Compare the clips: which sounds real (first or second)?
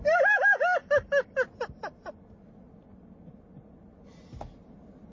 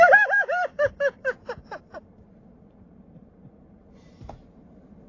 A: first